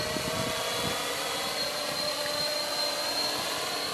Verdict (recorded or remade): recorded